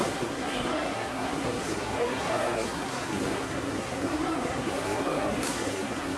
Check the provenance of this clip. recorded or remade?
remade